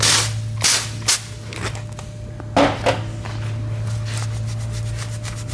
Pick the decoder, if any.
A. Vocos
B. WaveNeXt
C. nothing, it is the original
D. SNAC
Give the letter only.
C